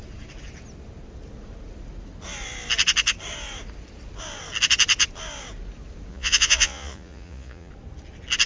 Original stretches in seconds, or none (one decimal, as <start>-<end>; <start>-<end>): 0.0-6.1; 7.7-8.5